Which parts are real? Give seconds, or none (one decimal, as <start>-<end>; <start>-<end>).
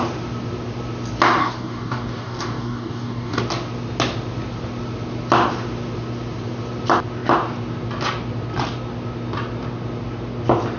0.0-1.4; 3.4-10.8